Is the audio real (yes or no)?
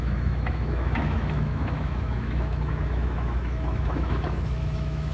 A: no